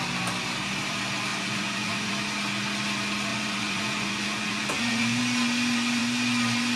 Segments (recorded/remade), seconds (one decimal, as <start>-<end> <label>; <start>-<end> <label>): 0.0-1.3 recorded; 1.3-2.1 remade; 2.1-3.3 recorded; 3.3-5.2 remade; 5.2-6.8 recorded